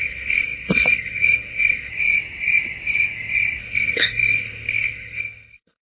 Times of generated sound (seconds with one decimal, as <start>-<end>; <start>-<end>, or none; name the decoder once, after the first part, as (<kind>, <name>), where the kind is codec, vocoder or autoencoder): 0.0-1.9 (codec, SNAC); 3.6-5.8